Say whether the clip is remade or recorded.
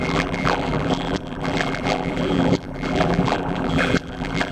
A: remade